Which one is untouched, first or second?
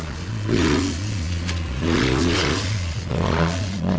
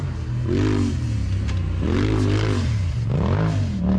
second